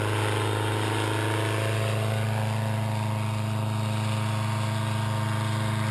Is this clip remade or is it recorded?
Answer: recorded